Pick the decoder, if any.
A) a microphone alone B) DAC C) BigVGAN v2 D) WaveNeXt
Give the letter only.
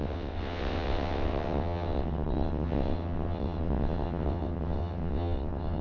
D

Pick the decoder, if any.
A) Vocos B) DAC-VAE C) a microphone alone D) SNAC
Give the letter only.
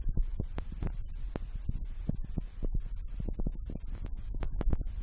C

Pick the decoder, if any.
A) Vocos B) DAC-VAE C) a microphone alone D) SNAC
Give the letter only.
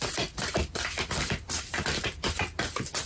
C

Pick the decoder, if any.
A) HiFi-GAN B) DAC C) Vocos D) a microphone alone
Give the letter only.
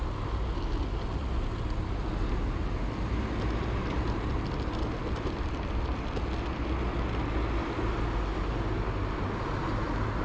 D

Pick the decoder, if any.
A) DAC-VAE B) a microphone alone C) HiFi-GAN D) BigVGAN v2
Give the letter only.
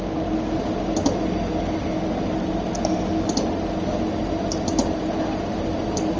B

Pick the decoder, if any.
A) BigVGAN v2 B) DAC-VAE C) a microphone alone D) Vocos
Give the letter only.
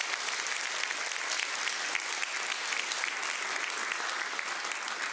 C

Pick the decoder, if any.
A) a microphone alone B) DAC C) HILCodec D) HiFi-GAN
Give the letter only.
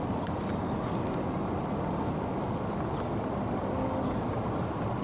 A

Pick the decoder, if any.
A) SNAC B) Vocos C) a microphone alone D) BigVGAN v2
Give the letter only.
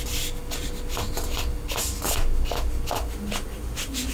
C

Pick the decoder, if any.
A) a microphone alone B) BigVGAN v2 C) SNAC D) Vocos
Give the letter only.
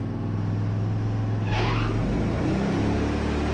A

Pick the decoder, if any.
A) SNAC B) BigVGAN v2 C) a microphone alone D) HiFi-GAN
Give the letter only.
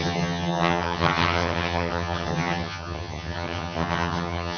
D